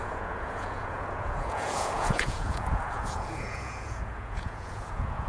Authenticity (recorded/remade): remade